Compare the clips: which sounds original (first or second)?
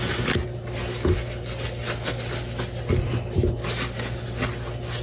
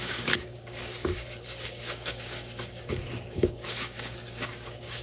first